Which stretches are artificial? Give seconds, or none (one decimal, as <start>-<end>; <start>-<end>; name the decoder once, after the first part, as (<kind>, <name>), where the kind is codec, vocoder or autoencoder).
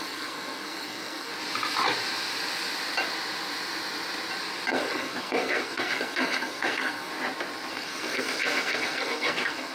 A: 0.0-1.3 (codec, SNAC); 4.7-7.1; 7.7-9.7